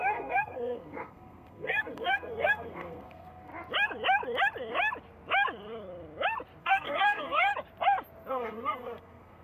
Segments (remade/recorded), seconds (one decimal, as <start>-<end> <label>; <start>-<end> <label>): 0.0-3.5 remade; 3.5-6.6 recorded; 6.6-7.5 remade; 7.5-8.3 recorded; 8.3-9.4 remade